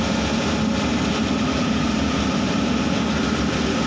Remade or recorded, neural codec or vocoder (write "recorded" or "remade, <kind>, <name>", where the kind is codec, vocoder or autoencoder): recorded